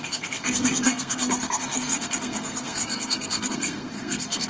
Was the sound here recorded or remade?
remade